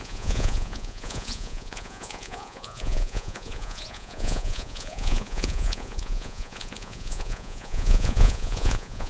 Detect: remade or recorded remade